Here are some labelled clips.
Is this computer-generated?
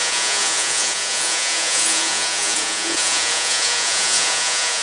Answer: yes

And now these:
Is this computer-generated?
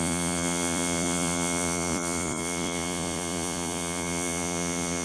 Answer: yes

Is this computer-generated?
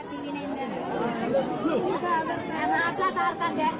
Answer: no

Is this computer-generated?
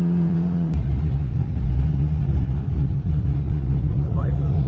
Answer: yes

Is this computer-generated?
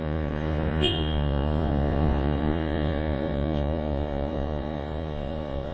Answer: yes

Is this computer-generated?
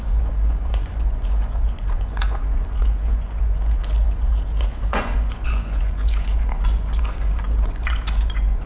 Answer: yes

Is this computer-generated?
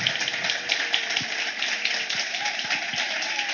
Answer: no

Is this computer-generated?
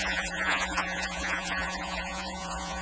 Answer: yes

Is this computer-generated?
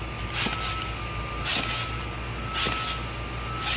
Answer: no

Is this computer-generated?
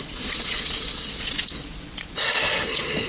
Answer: yes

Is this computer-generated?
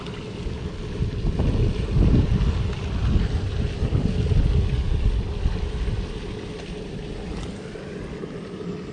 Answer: no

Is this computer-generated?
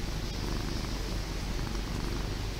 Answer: no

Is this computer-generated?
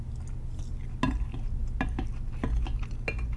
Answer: no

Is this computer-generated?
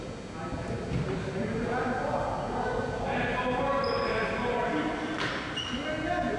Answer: no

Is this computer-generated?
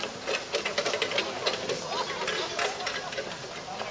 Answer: no